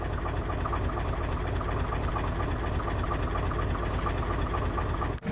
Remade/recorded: recorded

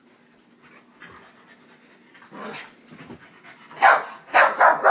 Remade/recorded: recorded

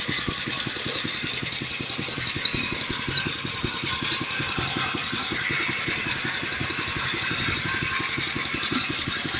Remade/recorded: recorded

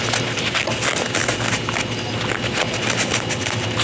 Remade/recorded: recorded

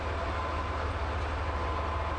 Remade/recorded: recorded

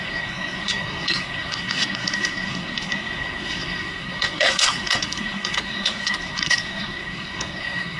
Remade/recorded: remade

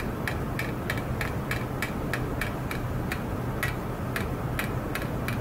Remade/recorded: recorded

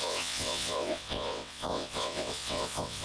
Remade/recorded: remade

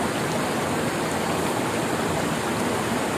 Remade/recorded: recorded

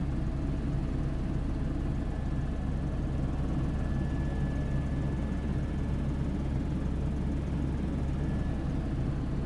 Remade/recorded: recorded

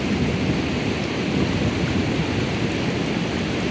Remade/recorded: recorded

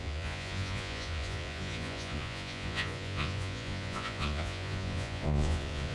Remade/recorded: remade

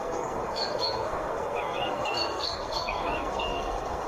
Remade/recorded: remade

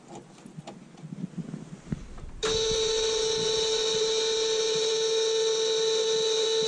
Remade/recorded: recorded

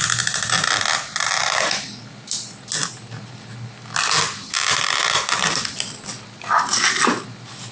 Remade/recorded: recorded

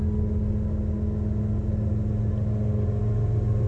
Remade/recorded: recorded